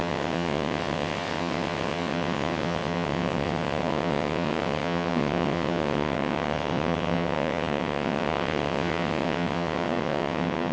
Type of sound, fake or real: fake